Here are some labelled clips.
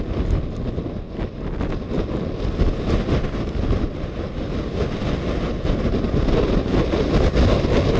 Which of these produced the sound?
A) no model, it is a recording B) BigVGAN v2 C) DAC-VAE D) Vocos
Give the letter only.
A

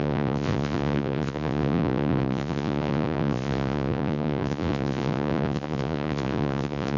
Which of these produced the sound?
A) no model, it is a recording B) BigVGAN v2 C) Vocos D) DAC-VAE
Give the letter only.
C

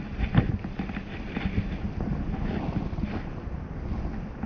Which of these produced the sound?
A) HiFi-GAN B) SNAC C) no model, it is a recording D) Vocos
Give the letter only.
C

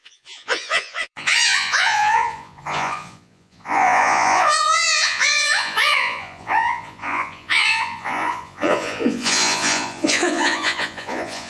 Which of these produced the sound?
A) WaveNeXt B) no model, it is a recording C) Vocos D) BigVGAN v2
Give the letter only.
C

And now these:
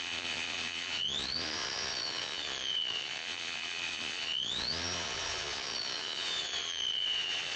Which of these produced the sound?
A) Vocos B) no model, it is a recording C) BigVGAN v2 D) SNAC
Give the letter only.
A